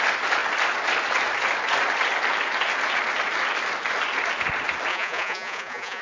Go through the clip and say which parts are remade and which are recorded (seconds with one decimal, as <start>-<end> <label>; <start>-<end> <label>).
0.0-4.9 recorded; 4.9-6.0 remade